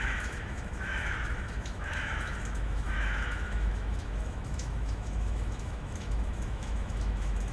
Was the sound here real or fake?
fake